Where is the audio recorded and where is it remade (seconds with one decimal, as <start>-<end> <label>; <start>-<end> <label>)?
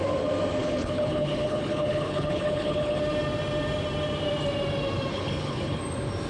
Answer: 0.0-0.6 recorded; 0.6-3.0 remade; 3.0-5.1 recorded; 5.1-5.8 remade; 5.8-6.3 recorded